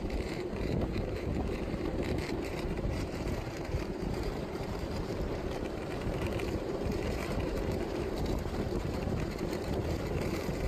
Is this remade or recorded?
remade